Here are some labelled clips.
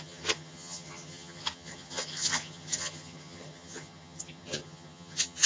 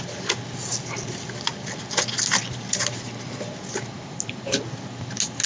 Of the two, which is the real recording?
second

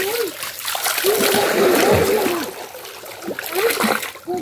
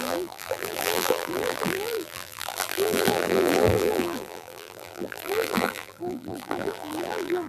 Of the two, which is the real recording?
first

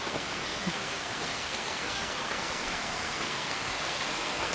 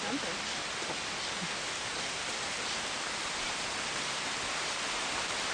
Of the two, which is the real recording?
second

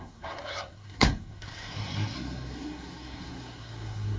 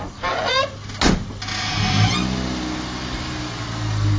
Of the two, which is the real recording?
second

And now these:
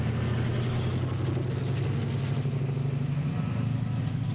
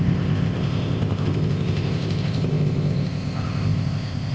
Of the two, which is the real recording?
first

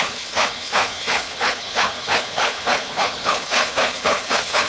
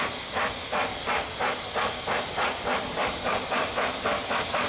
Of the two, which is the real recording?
second